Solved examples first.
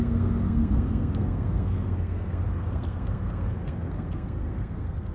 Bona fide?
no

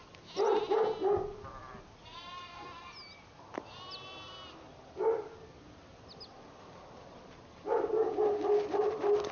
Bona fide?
yes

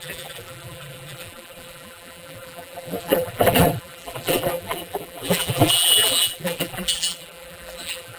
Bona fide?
no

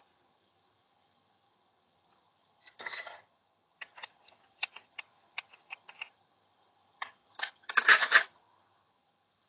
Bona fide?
no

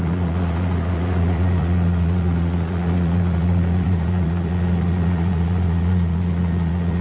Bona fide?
no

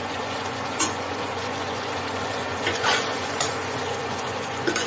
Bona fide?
no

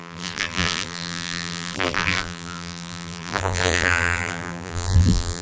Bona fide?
no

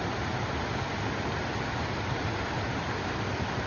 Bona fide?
yes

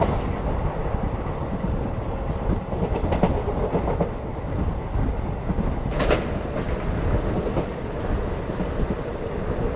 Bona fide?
yes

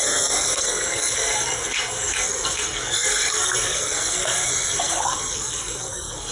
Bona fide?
no